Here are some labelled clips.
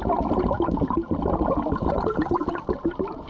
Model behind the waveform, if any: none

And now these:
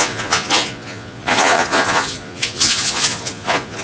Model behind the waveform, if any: vocoder, Vocos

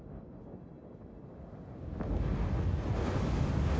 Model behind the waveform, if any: none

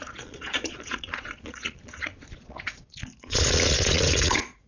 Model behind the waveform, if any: vocoder, Vocos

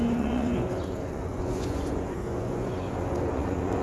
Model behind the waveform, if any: vocoder, Vocos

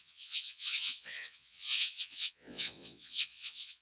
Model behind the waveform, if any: vocoder, Vocos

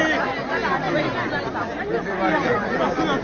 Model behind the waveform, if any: none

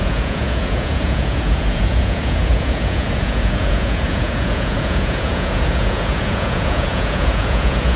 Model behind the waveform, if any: vocoder, Vocos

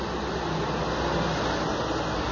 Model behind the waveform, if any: none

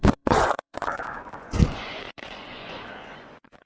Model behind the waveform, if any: vocoder, Vocos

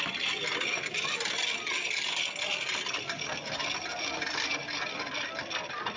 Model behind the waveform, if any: none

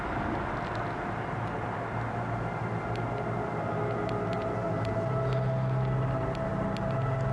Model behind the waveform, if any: none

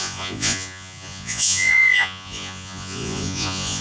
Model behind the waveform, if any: vocoder, Vocos